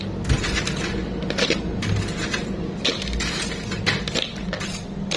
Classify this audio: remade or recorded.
recorded